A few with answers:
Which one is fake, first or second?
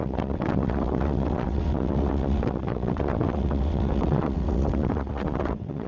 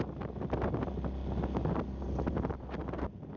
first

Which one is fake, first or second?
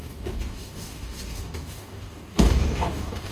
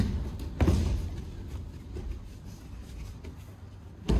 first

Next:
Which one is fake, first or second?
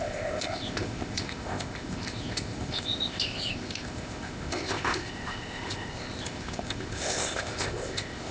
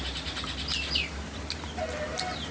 first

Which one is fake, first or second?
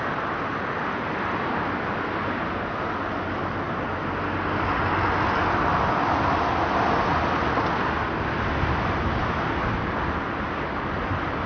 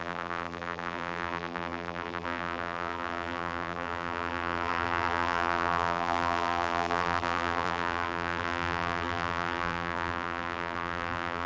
second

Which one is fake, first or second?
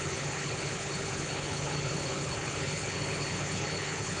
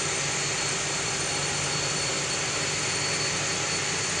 first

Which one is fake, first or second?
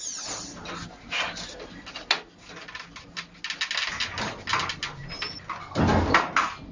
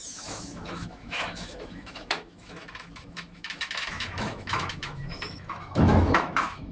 second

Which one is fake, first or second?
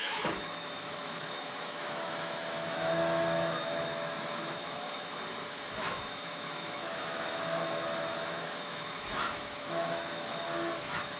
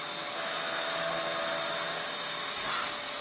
first